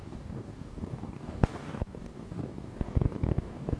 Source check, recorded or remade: remade